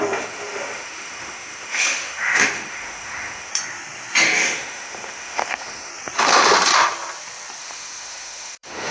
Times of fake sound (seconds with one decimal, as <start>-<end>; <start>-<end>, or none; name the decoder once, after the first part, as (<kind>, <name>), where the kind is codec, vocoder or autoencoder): 0.0-3.5 (autoencoder, DAC-VAE); 4.2-5.9; 7.6-8.9

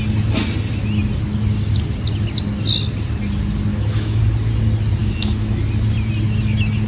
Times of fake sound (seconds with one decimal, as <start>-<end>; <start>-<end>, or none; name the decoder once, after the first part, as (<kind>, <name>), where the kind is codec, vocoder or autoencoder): 3.7-4.2 (autoencoder, DAC-VAE); 5.0-5.6